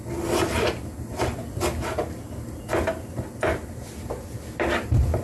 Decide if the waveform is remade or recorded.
recorded